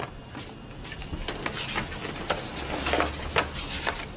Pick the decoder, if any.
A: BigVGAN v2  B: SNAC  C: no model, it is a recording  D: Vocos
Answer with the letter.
C